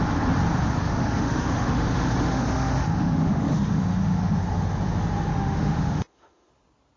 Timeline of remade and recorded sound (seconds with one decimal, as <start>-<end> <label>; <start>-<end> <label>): 0.0-0.8 recorded; 0.8-4.4 remade; 4.4-5.3 recorded; 5.3-6.5 remade; 6.5-7.0 recorded